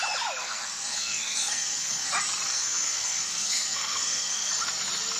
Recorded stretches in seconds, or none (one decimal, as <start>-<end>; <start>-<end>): 0.0-0.4; 2.1-2.5; 4.5-5.2